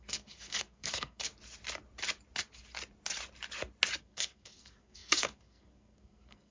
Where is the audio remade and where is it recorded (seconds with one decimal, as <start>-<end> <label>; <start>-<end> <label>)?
0.0-1.3 remade; 1.3-4.0 recorded; 4.0-6.5 remade